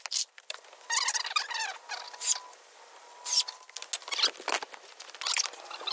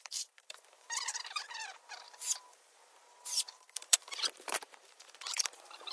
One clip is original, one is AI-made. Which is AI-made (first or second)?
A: second